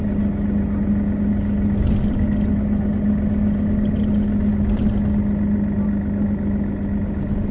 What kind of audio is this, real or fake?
real